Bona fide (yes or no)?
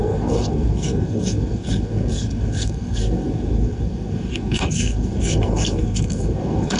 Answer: no